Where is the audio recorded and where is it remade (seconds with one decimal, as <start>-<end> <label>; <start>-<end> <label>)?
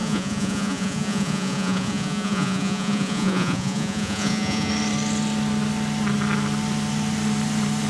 0.0-4.7 remade; 4.7-7.9 recorded